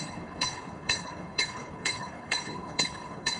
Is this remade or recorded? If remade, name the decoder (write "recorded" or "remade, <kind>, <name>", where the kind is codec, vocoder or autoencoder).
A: remade, codec, HILCodec